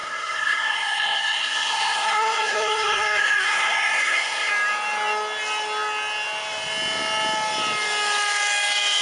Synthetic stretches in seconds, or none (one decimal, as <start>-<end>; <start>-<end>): 0.0-4.5